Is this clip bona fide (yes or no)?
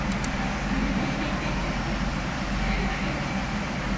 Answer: yes